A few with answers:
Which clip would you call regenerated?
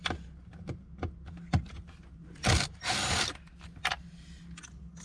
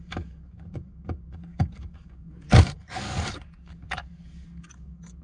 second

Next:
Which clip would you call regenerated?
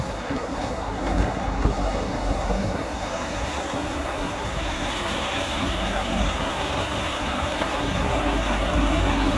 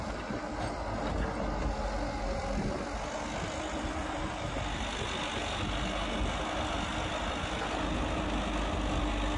first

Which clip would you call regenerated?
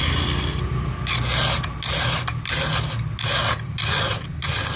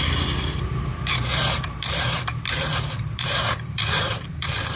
second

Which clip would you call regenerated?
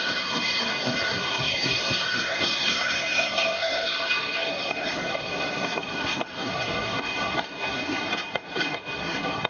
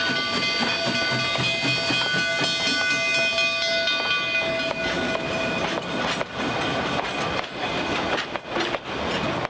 first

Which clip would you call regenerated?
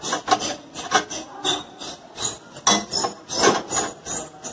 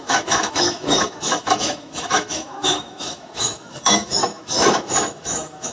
second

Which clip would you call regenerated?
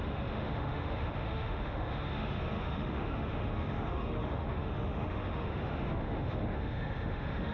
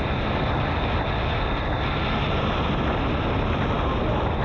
first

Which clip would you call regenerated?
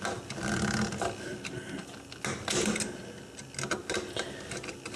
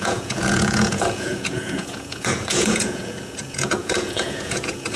second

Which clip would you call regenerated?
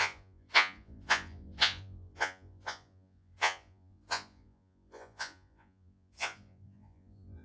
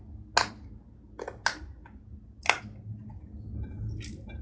first